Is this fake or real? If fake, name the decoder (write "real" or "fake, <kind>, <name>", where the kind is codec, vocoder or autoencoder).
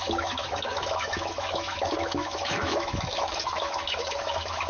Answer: fake, autoencoder, DAC-VAE